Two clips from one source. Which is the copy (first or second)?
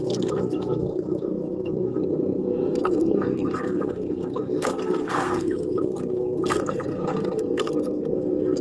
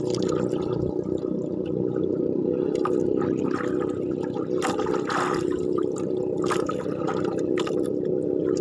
first